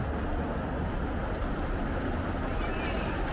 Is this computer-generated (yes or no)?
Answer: no